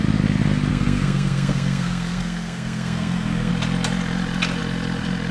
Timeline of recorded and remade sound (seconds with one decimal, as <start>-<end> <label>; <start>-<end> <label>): 0.0-0.7 recorded; 0.7-3.5 remade; 3.5-5.3 recorded